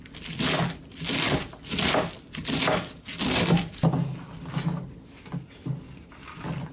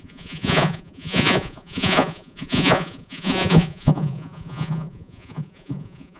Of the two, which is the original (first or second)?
first